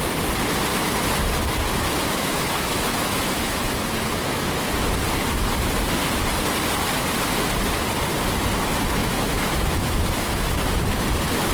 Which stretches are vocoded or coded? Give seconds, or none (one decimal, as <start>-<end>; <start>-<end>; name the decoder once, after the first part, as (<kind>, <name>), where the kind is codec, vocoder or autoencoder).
0.7-1.2 (autoencoder, DAC-VAE); 1.7-4.7; 9.0-10.6